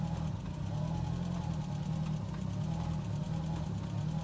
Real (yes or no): yes